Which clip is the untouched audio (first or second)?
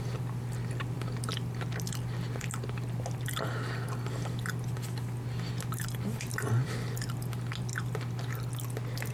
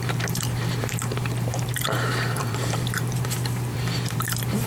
first